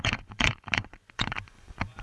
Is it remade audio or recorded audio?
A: remade